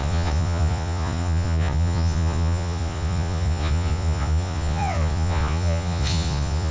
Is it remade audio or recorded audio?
remade